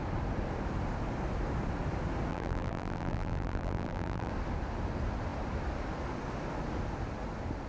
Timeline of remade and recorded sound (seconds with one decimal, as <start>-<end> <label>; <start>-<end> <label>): 0.0-2.3 recorded; 2.3-4.3 remade; 4.3-7.7 recorded